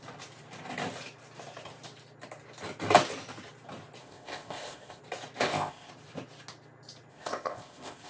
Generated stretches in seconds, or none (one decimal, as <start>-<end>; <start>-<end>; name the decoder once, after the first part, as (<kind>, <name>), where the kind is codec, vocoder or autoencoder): 4.0-5.0 (codec, ZipCodec); 5.4-5.9; 7.1-8.1